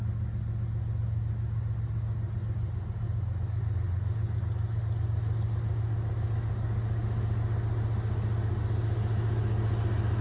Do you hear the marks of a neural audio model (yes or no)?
no